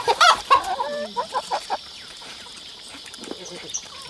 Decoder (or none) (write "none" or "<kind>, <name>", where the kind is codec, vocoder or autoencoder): vocoder, BigVGAN v2